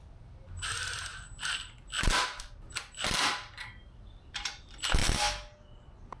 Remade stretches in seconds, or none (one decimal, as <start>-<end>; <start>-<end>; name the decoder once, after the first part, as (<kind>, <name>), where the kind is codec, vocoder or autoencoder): 0.0-5.0 (vocoder, BigVGAN v2)

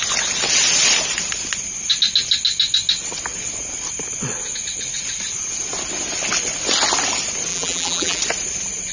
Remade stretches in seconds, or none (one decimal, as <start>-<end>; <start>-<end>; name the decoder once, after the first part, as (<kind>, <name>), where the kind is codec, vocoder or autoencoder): 7.5-8.2 (vocoder, BigVGAN v2)

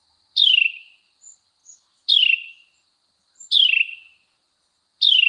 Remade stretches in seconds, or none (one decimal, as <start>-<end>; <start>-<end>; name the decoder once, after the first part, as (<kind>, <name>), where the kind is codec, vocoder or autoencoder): none

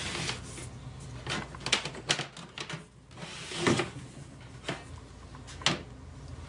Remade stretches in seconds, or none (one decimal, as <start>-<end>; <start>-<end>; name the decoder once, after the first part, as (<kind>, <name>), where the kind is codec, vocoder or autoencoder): none

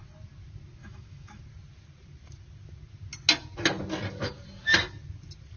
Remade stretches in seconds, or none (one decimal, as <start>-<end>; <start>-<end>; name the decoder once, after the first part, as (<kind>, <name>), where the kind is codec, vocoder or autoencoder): 0.8-1.4 (autoencoder, DAC-VAE)